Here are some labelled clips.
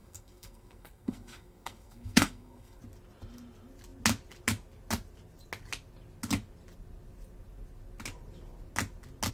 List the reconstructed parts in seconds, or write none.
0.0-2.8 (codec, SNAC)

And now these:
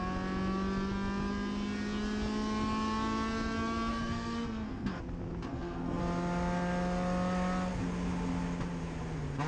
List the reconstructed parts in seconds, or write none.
3.9-5.0 (codec, SNAC); 5.5-6.0

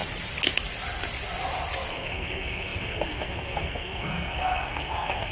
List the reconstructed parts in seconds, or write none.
1.9-5.3 (codec, SNAC)

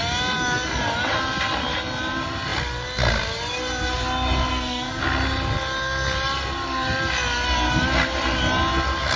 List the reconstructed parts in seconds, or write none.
4.5-5.0 (codec, SNAC)

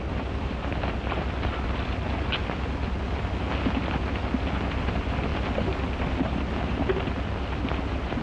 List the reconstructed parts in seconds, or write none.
none

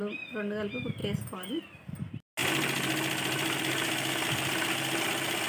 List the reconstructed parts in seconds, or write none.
none

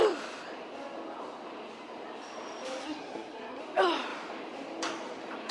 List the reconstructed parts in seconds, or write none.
2.8-3.6 (codec, SNAC)

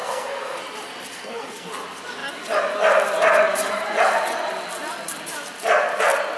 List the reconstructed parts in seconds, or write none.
0.0-0.6 (codec, SNAC); 1.1-1.7